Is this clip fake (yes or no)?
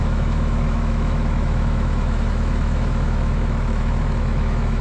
yes